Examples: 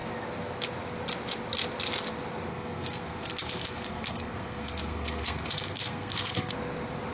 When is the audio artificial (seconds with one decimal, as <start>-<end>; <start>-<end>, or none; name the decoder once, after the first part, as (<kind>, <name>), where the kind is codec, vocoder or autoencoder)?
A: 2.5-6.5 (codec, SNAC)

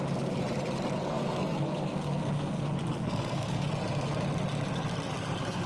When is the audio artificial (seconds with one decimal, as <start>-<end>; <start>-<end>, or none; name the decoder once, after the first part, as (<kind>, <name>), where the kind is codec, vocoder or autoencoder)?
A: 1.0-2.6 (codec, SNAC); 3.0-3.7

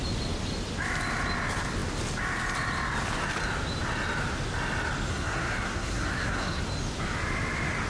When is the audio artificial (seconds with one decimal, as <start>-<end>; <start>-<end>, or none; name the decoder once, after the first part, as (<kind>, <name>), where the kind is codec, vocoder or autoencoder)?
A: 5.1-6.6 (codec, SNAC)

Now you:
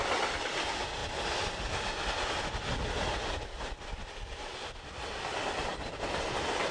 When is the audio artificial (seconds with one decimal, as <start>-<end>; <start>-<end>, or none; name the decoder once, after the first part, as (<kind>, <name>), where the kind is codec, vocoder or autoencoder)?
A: none

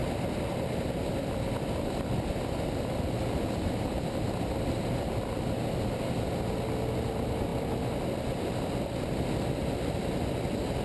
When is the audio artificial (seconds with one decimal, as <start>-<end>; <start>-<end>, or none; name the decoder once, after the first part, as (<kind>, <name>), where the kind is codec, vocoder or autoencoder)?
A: none

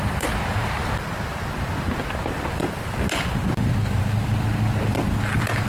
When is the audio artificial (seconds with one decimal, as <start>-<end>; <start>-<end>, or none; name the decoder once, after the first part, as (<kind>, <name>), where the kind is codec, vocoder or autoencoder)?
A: none